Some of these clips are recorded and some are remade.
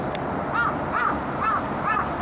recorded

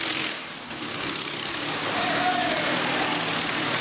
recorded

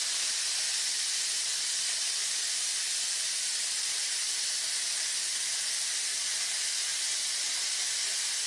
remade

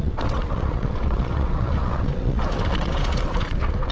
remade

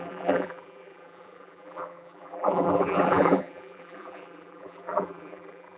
remade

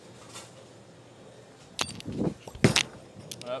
recorded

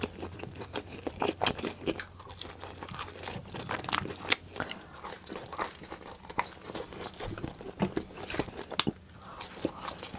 recorded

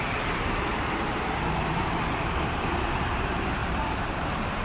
remade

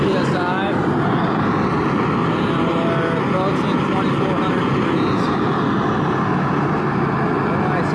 recorded